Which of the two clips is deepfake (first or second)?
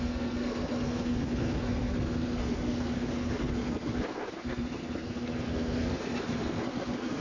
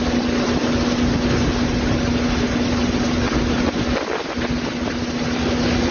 first